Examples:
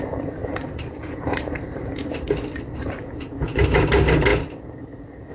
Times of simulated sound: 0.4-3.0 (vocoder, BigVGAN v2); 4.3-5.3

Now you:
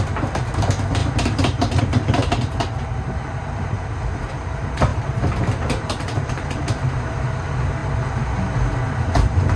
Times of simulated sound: 0.0-7.8 (vocoder, BigVGAN v2); 9.0-9.6

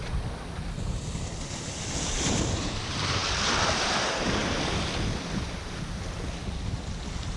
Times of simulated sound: none

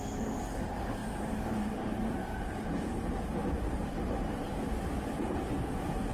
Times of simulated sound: 0.0-6.1 (vocoder, BigVGAN v2)

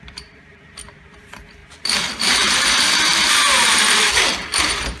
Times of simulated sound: 0.0-5.0 (vocoder, BigVGAN v2)

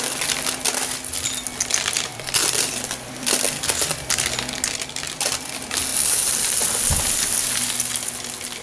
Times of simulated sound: 2.1-4.5 (vocoder, BigVGAN v2); 5.9-7.7